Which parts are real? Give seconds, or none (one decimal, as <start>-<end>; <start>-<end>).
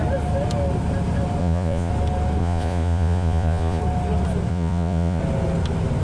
0.0-1.4; 1.9-2.4; 3.8-4.5; 5.2-6.0